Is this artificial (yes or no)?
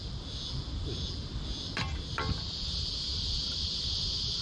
no